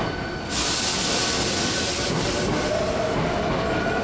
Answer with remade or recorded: recorded